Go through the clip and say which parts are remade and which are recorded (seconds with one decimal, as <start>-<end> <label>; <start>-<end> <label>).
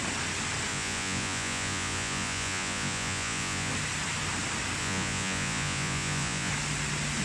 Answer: 0.0-0.7 recorded; 0.7-3.7 remade; 3.7-4.8 recorded; 4.8-6.5 remade; 6.5-7.2 recorded